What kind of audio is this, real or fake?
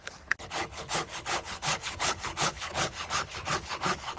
fake